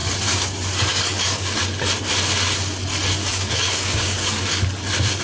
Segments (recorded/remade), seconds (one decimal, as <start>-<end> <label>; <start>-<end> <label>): 0.0-0.9 recorded; 0.9-1.6 remade; 1.6-3.2 recorded; 3.2-4.6 remade; 4.6-5.2 recorded